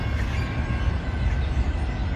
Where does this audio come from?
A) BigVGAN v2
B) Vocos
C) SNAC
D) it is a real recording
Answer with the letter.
D